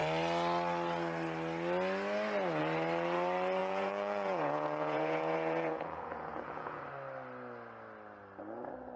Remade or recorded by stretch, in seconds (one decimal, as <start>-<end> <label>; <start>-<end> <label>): 0.0-3.6 recorded; 3.6-6.8 remade; 6.8-9.0 recorded